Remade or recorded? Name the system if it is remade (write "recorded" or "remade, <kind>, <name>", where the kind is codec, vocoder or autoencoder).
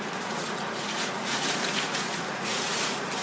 remade, vocoder, Vocos